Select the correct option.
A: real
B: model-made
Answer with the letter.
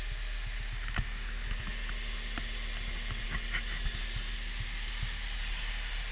A